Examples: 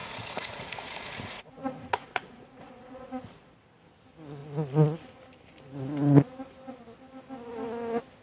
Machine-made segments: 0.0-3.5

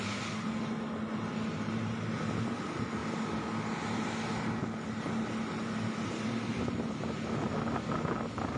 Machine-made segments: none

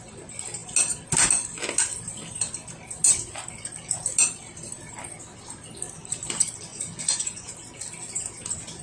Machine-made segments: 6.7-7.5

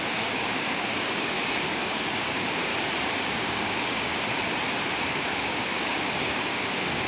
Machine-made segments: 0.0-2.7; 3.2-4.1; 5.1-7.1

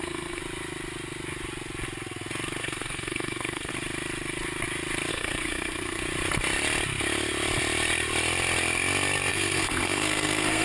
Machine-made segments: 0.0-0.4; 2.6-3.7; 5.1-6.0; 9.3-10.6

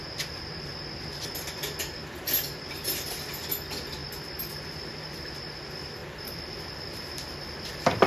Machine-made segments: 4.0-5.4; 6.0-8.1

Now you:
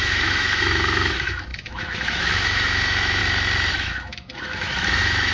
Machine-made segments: 0.0-3.2; 3.7-5.3

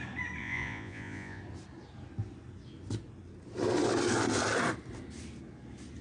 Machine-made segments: 0.4-1.4